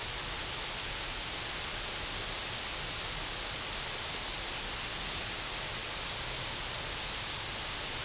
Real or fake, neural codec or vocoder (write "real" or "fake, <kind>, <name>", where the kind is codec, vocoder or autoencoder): real